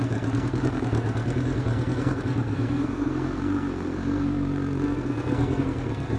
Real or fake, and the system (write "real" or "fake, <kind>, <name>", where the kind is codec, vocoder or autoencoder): fake, codec, SNAC